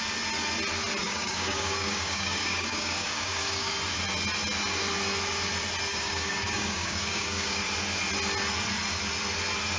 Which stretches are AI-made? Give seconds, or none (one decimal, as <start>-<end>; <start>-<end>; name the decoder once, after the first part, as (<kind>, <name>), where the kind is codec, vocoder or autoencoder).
1.0-3.7 (codec, DAC); 5.9-7.6